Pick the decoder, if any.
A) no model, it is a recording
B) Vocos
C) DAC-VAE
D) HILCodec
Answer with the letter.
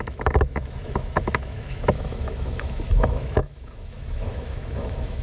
C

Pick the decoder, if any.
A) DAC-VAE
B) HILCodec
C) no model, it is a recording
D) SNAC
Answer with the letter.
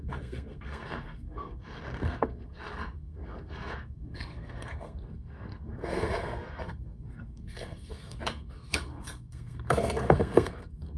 D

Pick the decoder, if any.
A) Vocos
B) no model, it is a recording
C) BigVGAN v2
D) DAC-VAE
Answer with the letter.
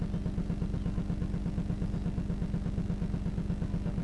B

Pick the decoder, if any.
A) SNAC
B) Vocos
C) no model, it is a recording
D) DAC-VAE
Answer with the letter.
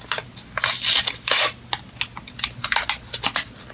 C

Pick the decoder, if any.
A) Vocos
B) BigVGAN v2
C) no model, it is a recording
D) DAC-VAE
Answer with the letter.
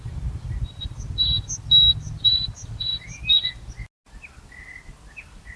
C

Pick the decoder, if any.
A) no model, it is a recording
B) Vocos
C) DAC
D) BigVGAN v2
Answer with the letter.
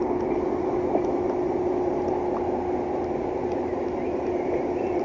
A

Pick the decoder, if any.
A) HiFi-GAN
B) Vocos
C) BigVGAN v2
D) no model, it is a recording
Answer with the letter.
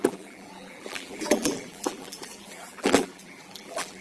C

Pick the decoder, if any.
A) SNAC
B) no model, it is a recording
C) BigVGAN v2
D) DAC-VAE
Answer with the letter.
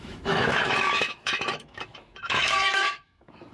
D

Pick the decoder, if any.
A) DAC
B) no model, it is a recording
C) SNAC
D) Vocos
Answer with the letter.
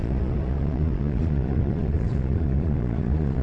D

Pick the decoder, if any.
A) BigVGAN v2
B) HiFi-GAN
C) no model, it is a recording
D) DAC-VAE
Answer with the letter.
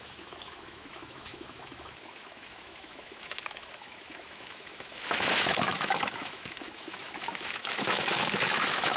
D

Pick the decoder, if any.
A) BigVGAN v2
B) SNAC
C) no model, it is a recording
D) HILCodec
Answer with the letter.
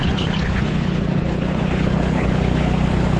D